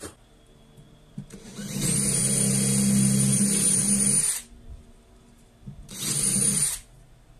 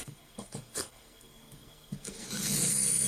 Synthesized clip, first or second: second